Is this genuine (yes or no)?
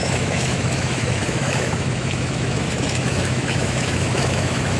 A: no